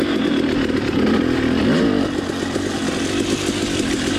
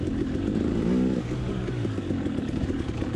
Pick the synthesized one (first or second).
second